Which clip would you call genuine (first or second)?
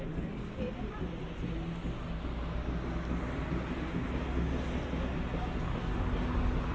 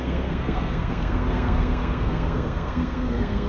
first